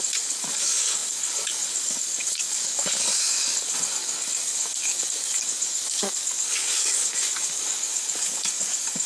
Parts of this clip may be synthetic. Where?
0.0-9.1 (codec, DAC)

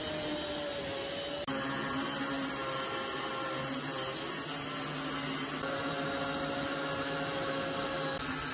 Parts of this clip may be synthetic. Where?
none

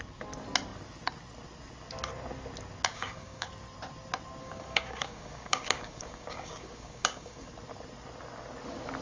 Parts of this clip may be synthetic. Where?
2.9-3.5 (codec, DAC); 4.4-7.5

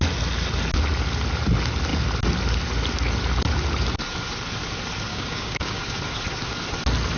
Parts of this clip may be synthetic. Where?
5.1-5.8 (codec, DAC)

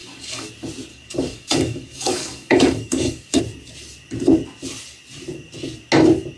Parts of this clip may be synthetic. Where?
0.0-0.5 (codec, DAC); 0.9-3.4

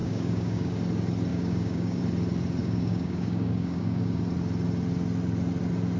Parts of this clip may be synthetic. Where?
0.0-0.7 (codec, DAC); 1.3-2.0; 2.6-4.2